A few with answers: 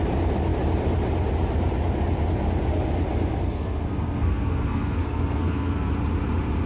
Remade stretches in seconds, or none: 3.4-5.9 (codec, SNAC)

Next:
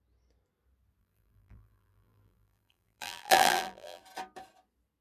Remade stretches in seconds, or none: 1.0-4.0 (vocoder, BigVGAN v2)

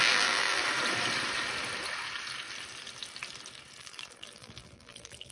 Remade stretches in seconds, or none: 0.0-0.6 (vocoder, BigVGAN v2); 3.8-5.3

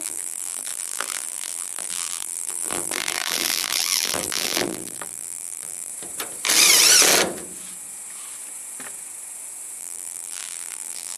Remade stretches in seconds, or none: 0.0-5.9 (vocoder, BigVGAN v2); 9.8-11.2